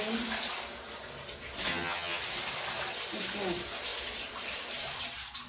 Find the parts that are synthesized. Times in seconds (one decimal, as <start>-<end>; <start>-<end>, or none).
1.7-2.2